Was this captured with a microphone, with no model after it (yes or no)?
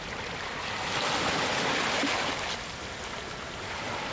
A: yes